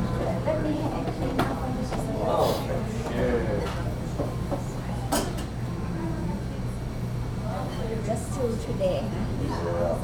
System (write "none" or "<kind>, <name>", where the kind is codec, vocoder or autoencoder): none